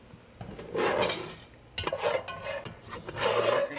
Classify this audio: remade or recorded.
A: recorded